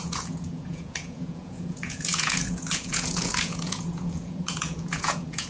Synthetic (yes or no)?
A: yes